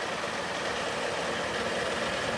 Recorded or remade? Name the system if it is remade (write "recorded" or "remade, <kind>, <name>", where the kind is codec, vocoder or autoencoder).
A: recorded